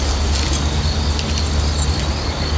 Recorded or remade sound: recorded